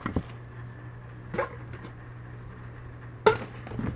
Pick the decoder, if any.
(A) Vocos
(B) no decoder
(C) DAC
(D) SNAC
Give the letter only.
B